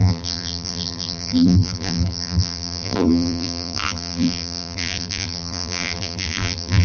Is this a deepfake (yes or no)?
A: yes